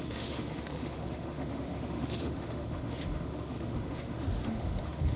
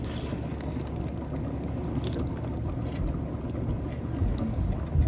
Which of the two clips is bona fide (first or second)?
second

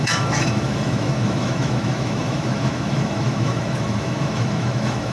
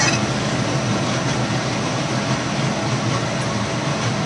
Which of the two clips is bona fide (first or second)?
second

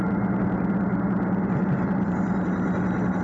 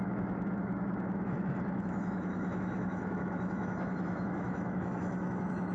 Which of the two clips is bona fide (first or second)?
first